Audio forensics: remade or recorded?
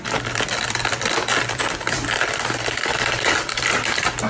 remade